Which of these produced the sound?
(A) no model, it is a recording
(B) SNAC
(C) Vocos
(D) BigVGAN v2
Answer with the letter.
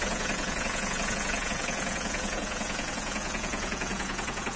C